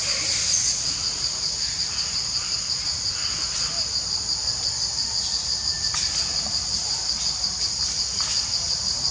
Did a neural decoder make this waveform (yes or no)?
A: no